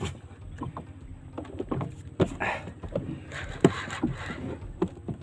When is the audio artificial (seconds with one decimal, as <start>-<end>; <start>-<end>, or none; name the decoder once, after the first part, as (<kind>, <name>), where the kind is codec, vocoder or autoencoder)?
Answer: none